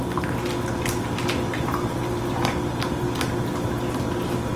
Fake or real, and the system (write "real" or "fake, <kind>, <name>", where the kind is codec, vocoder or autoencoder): real